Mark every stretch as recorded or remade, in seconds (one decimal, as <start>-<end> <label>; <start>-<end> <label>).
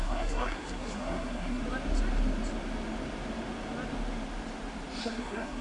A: 0.0-1.6 remade; 1.6-5.0 recorded; 5.0-5.6 remade